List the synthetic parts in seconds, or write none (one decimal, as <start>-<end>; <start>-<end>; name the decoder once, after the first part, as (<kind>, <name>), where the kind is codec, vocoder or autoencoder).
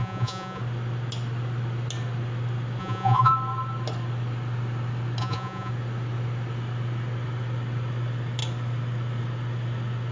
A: 0.0-0.6 (vocoder, Vocos); 2.8-3.3; 5.2-5.7